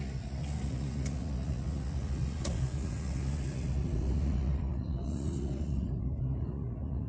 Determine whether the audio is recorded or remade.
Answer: remade